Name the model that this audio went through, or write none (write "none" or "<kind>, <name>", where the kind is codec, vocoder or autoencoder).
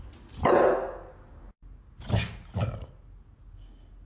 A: none